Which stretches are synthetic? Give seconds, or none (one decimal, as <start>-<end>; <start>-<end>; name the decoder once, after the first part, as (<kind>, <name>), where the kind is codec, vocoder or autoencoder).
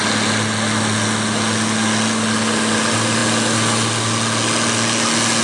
none